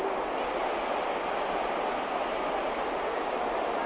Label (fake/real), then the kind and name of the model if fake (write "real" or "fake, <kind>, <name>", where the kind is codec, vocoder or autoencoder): real